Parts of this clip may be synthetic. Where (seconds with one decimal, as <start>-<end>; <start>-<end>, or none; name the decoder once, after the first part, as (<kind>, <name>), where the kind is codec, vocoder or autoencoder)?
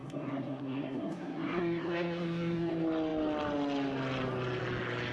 0.0-2.7 (codec, SNAC)